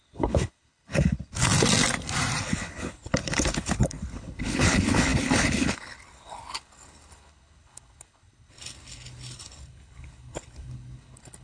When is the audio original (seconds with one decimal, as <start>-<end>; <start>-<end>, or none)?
1.5-2.4